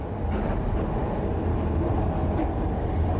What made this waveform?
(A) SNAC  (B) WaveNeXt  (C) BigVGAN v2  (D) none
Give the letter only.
D